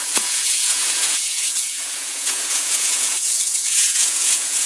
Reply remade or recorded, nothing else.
remade